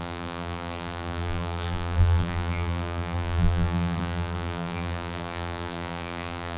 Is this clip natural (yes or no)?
no